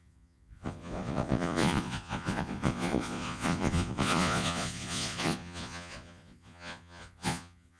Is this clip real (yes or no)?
no